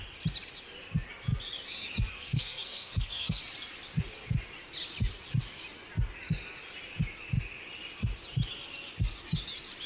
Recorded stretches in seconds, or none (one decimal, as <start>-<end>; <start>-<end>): 0.0-2.1; 3.4-9.9